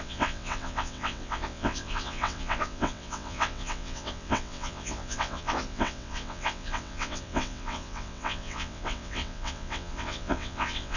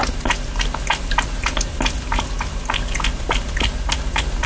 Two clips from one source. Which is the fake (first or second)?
first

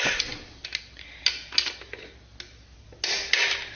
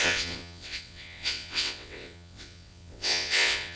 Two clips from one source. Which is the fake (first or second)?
second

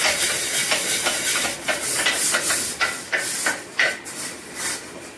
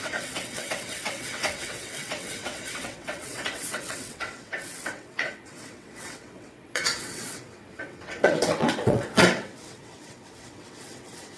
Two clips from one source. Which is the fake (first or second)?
second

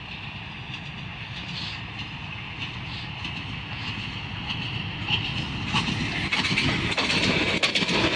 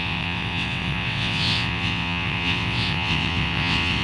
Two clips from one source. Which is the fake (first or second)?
second